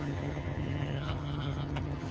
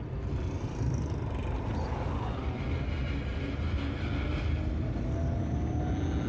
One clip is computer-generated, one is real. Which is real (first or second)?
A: second